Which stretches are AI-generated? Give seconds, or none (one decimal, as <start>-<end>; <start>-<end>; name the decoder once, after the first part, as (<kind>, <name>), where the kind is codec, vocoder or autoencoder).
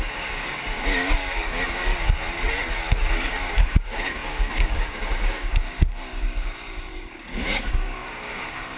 0.0-1.9 (codec, DAC); 3.1-8.8